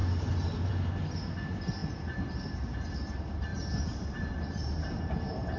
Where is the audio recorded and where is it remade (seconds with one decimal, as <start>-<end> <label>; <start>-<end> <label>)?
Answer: 0.0-3.5 recorded; 3.5-5.0 remade; 5.0-5.6 recorded

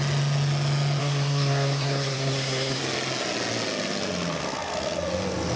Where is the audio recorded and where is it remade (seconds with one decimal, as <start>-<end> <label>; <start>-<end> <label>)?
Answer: 0.0-1.0 recorded; 1.0-2.8 remade; 2.8-5.6 recorded

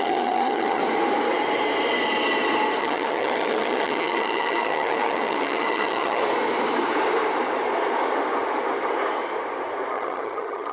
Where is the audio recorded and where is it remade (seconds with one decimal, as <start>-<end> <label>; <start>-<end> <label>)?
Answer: 0.0-0.8 remade; 0.8-2.8 recorded; 2.8-6.2 remade; 6.2-9.9 recorded; 9.9-10.7 remade

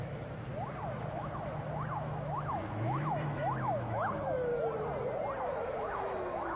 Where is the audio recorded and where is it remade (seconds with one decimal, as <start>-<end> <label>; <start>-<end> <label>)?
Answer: 0.0-0.5 remade; 0.5-1.1 recorded; 1.1-4.5 remade; 4.5-5.4 recorded; 5.4-6.6 remade

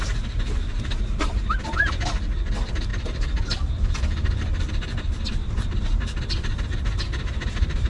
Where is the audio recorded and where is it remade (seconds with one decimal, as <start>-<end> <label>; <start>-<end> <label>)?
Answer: 0.0-2.9 recorded; 2.9-5.3 remade; 5.3-7.9 recorded

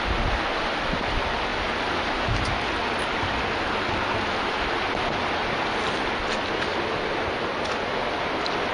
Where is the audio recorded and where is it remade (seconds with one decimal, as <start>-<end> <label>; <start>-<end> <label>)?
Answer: 0.0-8.7 recorded